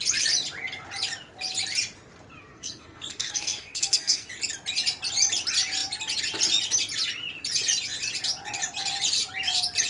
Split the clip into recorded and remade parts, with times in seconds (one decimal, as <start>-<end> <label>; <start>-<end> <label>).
0.0-2.5 recorded; 2.5-4.3 remade; 4.3-9.9 recorded